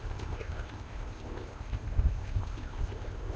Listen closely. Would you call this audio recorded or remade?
remade